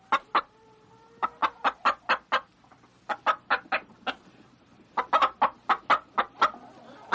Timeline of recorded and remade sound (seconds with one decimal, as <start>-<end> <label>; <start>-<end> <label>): 0.0-7.1 recorded